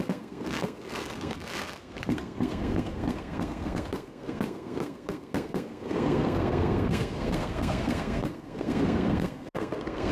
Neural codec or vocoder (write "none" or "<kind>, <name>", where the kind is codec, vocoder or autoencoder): codec, SNAC